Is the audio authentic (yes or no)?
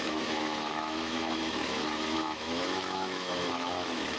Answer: no